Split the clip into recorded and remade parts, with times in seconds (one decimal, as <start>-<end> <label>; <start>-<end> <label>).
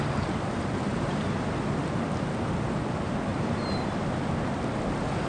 0.0-0.9 recorded; 0.9-1.5 remade; 1.5-3.3 recorded; 3.3-3.9 remade; 3.9-5.3 recorded